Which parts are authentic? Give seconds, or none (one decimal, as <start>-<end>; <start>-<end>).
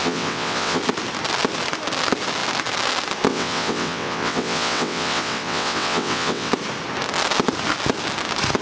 0.8-3.3; 6.5-8.6